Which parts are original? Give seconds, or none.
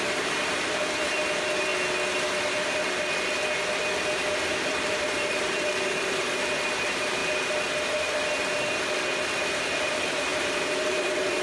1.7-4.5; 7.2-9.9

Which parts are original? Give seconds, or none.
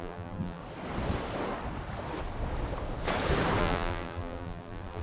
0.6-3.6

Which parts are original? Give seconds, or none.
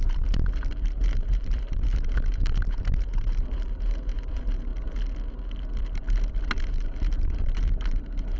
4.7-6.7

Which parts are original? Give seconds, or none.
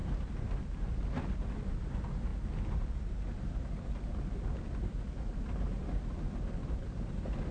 0.0-7.5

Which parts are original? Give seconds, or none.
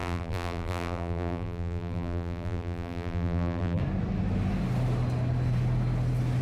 3.8-6.4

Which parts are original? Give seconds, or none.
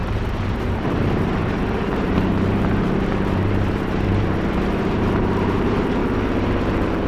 6.0-7.1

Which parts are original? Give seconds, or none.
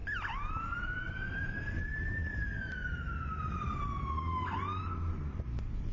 0.0-0.5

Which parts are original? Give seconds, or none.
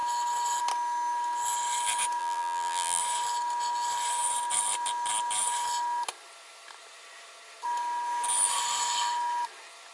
0.0-2.2; 3.0-9.9